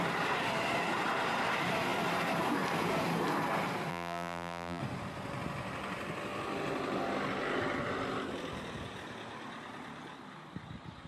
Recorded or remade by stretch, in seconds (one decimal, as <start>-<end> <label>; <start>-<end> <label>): 0.0-3.9 recorded; 3.9-4.8 remade; 4.8-11.1 recorded